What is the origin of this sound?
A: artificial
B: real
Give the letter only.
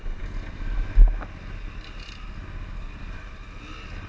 B